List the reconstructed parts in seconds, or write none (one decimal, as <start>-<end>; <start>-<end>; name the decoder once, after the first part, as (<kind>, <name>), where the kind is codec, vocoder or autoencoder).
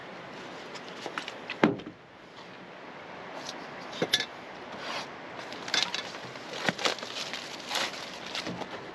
none